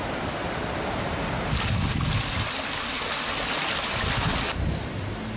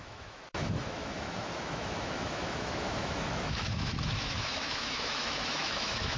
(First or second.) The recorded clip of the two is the first